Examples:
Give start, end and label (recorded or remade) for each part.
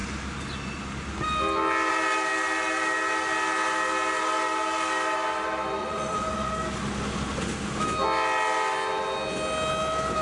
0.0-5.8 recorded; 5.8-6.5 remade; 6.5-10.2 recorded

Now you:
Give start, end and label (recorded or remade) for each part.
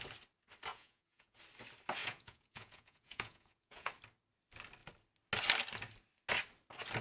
0.0-0.7 recorded; 0.7-1.4 remade; 1.4-2.0 recorded; 2.0-3.9 remade; 3.9-7.0 recorded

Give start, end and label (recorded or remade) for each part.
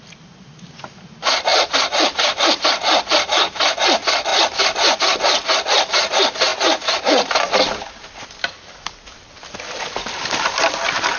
0.0-11.2 recorded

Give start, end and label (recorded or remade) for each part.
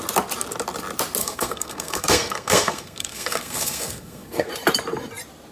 0.0-1.2 recorded; 1.2-4.5 remade; 4.5-5.5 recorded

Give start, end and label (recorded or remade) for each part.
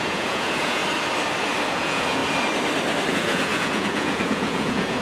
0.0-0.8 remade; 0.8-1.7 recorded; 1.7-2.2 remade; 2.2-3.1 recorded; 3.1-5.0 remade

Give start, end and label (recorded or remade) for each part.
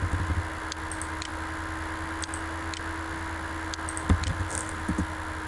0.0-5.5 recorded